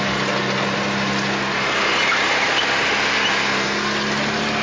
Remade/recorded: recorded